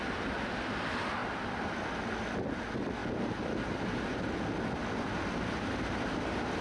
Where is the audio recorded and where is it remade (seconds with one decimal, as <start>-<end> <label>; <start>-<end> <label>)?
0.0-1.2 recorded; 1.2-1.9 remade; 1.9-3.0 recorded; 3.0-3.9 remade; 3.9-4.8 recorded; 4.8-6.6 remade